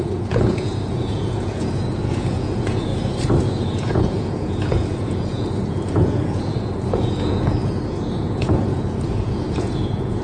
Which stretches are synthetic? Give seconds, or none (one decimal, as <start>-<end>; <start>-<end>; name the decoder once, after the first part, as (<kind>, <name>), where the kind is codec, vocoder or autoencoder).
0.0-2.9 (vocoder, Vocos); 3.4-10.2